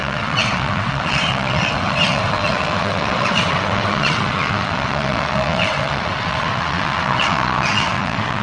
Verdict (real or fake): fake